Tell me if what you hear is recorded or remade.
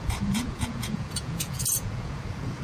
remade